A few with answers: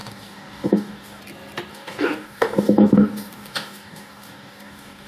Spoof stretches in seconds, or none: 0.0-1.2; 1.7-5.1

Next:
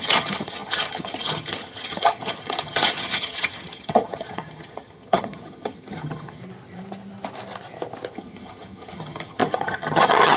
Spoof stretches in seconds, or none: 0.0-6.4; 8.1-10.4

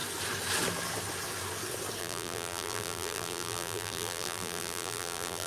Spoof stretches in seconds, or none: 2.0-5.5

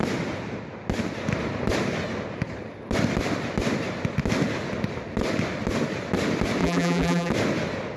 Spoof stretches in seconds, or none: 6.6-7.3

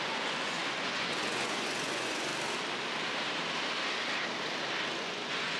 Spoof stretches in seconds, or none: 0.0-2.3; 5.0-5.6

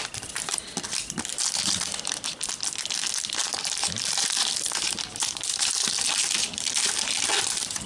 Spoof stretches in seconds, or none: 0.0-7.9